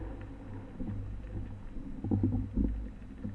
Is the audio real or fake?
real